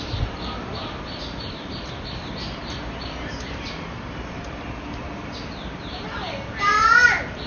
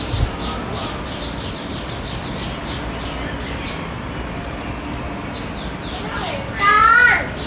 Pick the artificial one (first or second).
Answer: first